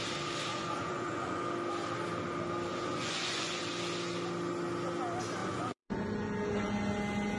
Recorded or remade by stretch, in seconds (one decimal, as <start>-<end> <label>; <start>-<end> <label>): 0.0-0.5 recorded; 0.5-1.4 remade; 1.4-2.7 recorded; 2.7-3.6 remade; 3.6-5.4 recorded; 5.4-6.0 remade; 6.0-7.4 recorded